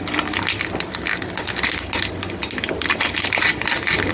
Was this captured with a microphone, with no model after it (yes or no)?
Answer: yes